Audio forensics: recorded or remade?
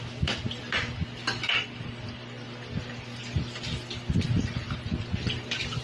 remade